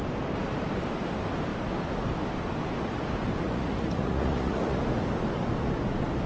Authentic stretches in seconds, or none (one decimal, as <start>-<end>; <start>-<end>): 0.0-3.4; 4.8-6.3